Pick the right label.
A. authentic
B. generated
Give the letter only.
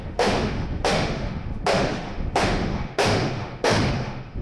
B